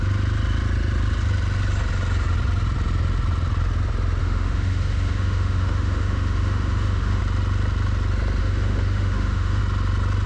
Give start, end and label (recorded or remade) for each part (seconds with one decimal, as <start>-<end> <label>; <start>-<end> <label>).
0.0-4.2 recorded; 4.2-7.2 remade; 7.2-8.4 recorded; 8.4-9.6 remade; 9.6-10.3 recorded